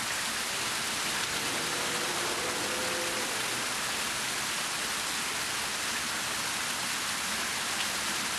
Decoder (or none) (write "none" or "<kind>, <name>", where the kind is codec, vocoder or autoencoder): none